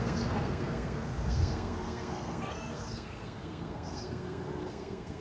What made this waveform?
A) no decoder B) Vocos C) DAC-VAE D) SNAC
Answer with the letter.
D